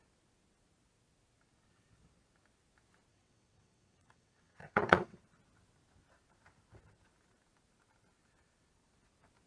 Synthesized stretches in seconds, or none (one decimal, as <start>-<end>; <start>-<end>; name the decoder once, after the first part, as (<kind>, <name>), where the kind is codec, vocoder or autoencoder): 3.1-5.2 (vocoder, WaveNeXt)